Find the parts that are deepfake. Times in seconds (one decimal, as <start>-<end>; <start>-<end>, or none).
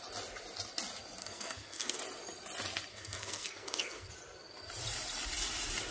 1.2-2.0; 2.9-4.1